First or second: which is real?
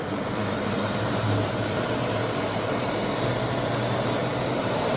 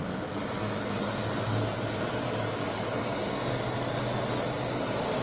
second